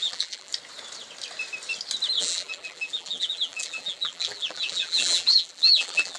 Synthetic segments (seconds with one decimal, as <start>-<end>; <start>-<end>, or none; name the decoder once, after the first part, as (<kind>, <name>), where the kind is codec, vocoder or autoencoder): 0.0-0.5 (vocoder, BigVGAN v2); 2.2-6.2